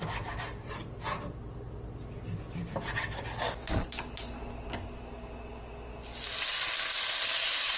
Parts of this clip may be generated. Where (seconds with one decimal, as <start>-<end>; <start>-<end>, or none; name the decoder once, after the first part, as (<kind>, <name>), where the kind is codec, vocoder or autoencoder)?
none